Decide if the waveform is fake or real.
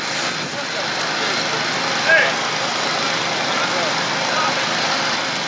real